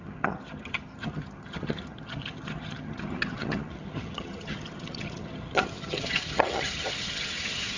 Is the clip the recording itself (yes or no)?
no